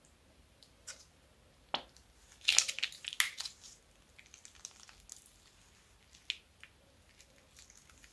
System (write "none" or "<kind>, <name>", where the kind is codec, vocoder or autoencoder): none